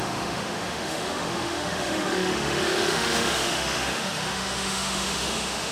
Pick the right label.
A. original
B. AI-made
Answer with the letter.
B